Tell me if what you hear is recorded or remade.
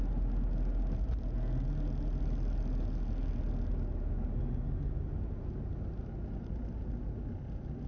recorded